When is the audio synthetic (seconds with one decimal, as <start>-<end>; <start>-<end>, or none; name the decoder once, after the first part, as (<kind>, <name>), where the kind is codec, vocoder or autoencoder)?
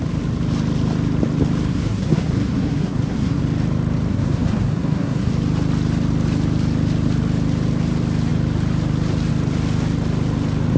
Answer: 1.7-3.4 (codec, SNAC); 4.1-5.3